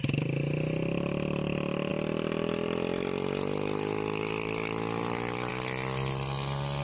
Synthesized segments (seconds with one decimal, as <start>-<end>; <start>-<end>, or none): none